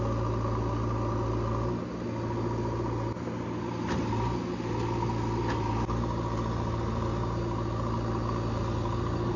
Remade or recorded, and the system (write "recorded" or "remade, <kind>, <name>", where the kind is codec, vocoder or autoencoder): recorded